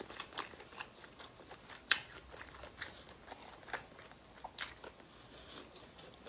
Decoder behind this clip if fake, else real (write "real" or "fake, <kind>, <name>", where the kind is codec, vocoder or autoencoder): real